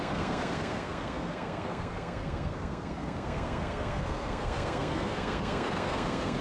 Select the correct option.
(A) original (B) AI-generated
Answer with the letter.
B